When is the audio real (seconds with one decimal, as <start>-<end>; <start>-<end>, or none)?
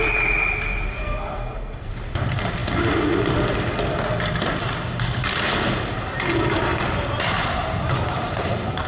0.0-1.0; 1.9-8.9